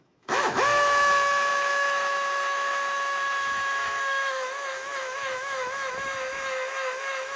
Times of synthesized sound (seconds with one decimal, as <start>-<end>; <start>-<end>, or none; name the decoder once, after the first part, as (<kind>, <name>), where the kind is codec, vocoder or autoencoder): 0.0-7.4 (autoencoder, DAC-VAE)